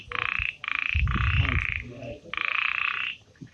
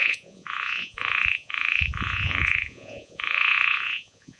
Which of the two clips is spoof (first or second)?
second